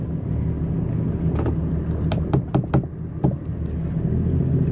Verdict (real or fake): real